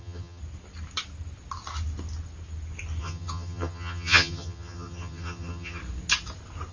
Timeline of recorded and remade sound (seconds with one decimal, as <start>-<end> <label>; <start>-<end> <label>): 0.0-0.4 remade; 0.4-3.0 recorded; 3.0-5.8 remade; 5.8-6.7 recorded